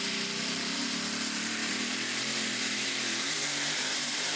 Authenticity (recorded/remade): remade